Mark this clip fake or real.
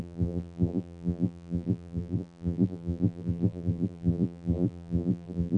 fake